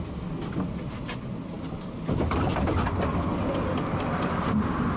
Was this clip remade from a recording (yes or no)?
no